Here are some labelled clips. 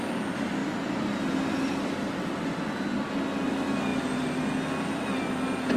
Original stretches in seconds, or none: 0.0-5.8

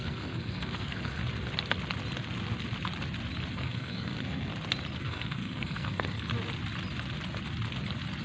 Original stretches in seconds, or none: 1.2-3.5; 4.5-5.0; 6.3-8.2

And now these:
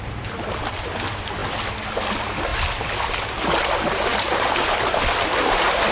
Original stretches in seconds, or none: 0.0-5.9

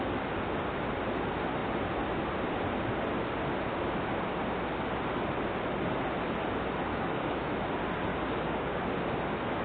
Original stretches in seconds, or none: 0.0-6.9; 7.5-8.1; 8.8-9.6

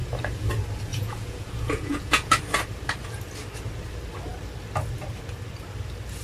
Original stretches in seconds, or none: 0.0-0.9; 2.4-6.2

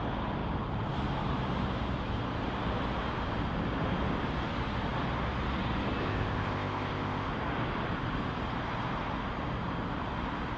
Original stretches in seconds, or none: 0.0-6.0; 7.3-10.6

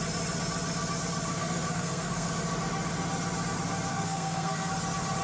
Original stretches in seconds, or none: 0.0-1.3; 2.3-3.9; 4.7-5.2